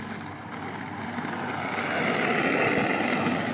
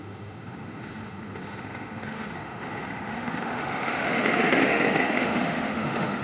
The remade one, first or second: second